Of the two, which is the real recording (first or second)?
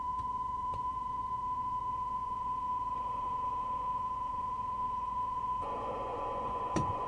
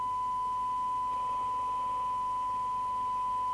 second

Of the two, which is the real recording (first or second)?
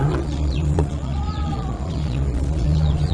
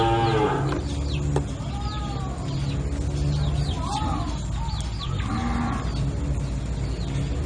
second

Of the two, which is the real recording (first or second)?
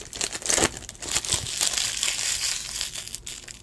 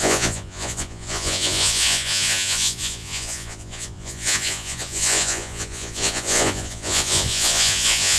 first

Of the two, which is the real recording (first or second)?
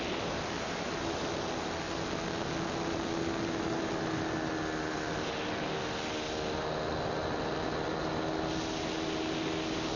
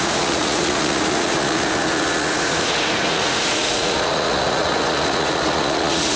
first